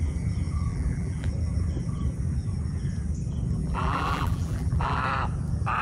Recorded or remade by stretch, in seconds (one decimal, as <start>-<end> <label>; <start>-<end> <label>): 0.0-0.7 recorded; 0.7-1.3 remade; 1.3-3.6 recorded; 3.6-5.0 remade; 5.0-5.8 recorded